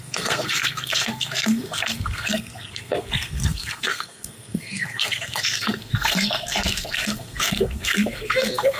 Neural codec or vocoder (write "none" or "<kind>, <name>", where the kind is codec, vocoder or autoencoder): codec, SNAC